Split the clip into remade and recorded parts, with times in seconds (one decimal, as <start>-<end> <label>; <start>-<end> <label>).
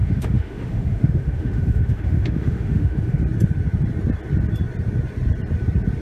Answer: 0.0-3.2 remade; 3.2-6.0 recorded